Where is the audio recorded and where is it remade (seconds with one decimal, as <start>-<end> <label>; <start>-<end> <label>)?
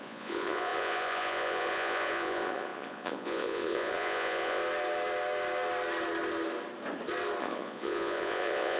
0.0-4.6 remade; 4.6-7.4 recorded; 7.4-8.8 remade